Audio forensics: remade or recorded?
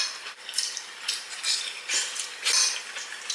remade